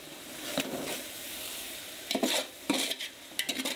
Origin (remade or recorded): remade